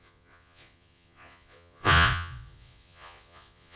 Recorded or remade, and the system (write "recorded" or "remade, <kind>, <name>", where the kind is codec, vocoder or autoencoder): remade, vocoder, Vocos